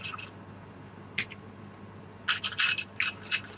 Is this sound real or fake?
real